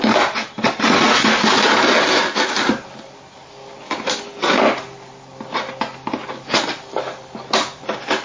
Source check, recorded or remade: recorded